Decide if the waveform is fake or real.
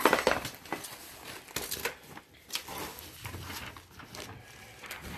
real